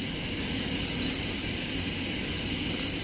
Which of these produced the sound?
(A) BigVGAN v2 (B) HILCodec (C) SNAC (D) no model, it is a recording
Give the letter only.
D